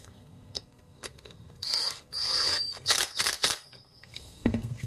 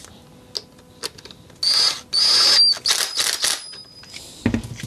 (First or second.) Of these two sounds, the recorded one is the second